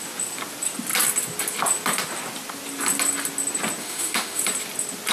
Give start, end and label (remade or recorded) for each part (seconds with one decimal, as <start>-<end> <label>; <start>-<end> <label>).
0.0-3.8 recorded; 3.8-4.4 remade; 4.4-5.1 recorded